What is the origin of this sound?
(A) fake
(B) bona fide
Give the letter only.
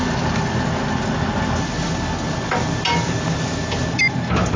B